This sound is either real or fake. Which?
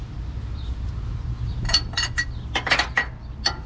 real